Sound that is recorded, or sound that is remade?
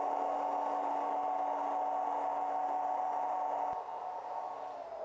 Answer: recorded